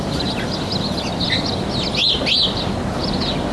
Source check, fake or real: real